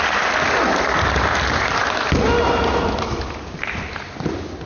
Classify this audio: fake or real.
real